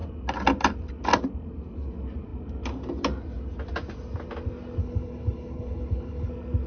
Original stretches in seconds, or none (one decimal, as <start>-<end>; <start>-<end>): 0.0-4.8; 6.3-6.7